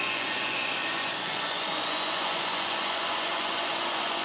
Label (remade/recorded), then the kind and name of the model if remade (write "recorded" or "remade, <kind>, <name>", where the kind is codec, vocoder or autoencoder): remade, vocoder, Vocos